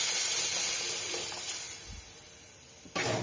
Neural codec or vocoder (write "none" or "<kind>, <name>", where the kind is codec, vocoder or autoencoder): none